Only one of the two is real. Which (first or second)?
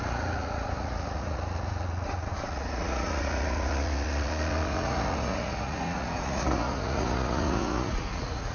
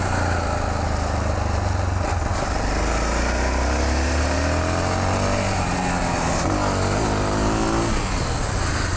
second